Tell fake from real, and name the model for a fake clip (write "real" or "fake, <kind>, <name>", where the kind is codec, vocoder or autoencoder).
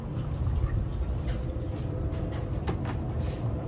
real